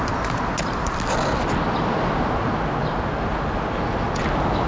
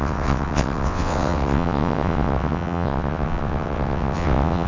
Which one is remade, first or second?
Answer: second